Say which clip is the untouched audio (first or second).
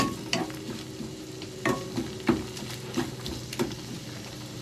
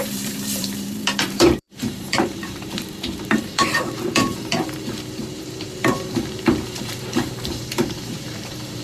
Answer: first